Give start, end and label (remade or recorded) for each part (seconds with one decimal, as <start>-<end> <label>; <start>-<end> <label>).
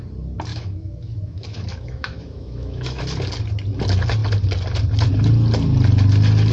0.0-0.5 recorded; 0.5-3.0 remade; 3.0-6.5 recorded